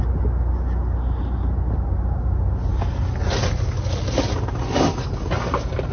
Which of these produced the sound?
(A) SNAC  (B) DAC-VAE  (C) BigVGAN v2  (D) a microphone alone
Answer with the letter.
D